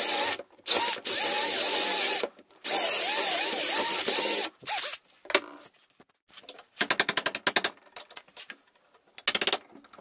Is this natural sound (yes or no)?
yes